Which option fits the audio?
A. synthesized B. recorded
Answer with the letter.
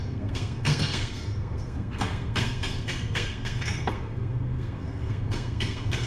A